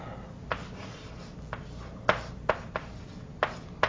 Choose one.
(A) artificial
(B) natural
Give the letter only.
B